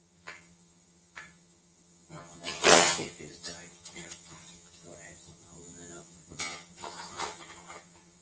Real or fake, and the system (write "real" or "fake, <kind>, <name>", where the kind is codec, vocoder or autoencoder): fake, vocoder, HiFi-GAN